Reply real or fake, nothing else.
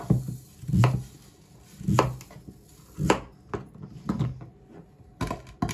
real